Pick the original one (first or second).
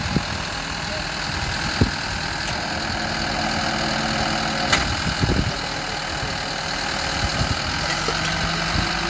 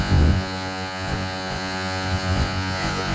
first